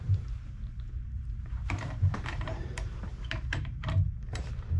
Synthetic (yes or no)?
yes